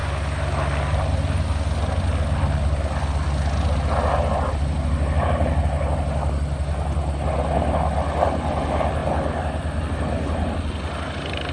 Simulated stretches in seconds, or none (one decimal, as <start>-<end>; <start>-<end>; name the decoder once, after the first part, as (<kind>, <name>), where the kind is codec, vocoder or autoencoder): none